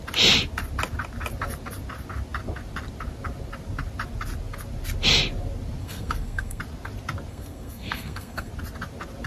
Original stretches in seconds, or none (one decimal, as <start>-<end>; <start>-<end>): 0.0-5.8; 6.6-7.3; 8.5-9.3